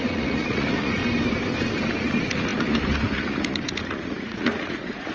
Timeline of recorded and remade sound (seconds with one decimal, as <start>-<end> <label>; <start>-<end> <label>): 0.0-1.0 remade; 1.0-2.0 recorded; 2.0-5.1 remade